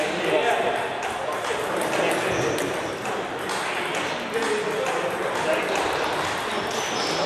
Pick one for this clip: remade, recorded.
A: recorded